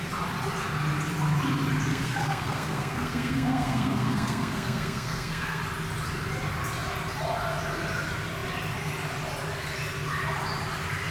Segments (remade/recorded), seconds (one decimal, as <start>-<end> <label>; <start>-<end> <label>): 0.0-1.9 recorded; 1.9-5.6 remade; 5.6-11.1 recorded